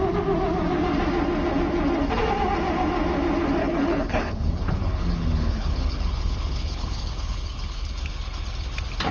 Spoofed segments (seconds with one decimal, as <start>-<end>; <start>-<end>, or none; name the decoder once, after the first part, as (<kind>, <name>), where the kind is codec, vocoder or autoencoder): 3.6-8.1 (codec, HILCodec)